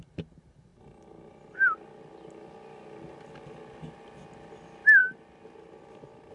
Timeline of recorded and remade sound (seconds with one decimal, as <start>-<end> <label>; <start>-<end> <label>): 0.0-6.3 recorded